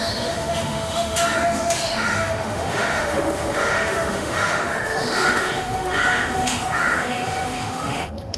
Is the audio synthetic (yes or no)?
yes